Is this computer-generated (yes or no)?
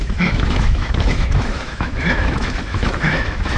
yes